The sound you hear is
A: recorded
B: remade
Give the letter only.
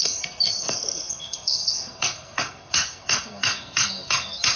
B